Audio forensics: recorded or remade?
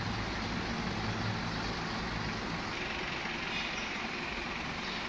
recorded